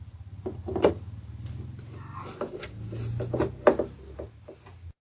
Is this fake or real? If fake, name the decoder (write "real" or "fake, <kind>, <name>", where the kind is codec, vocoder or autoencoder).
real